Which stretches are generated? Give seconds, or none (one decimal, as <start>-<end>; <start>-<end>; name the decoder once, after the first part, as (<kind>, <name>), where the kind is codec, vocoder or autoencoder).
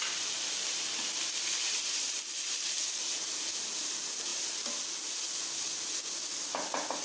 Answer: none